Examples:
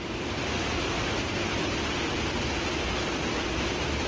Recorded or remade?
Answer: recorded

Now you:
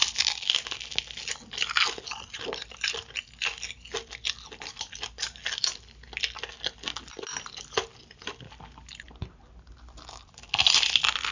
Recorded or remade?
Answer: recorded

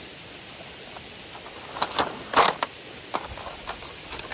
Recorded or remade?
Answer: recorded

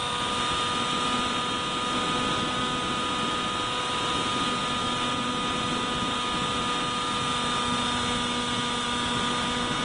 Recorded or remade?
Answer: recorded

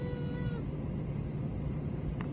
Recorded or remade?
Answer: recorded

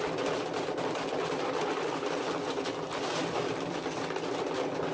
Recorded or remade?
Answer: recorded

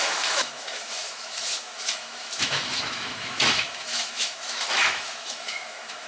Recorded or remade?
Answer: remade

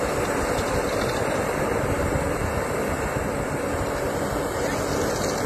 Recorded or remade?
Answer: recorded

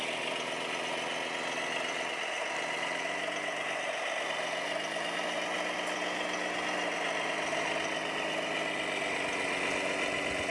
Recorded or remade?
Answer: recorded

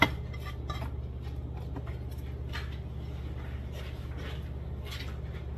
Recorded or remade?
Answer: recorded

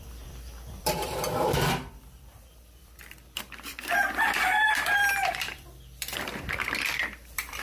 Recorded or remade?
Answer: remade